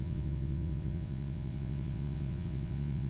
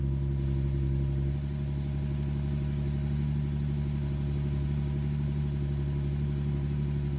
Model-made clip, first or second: first